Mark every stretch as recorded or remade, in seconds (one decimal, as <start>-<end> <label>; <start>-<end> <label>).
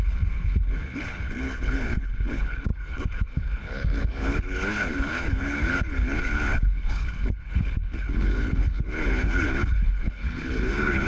0.0-11.1 remade